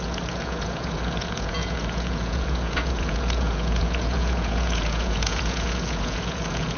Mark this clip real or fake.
fake